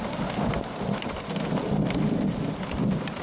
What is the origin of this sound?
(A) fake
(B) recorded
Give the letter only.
B